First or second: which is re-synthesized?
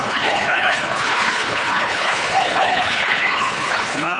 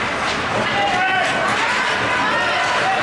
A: first